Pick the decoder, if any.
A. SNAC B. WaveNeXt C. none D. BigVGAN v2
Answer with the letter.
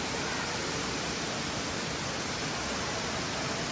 D